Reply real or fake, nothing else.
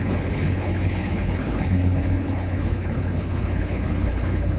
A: fake